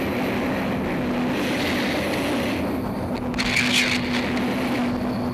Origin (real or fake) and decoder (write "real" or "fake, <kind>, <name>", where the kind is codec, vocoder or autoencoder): real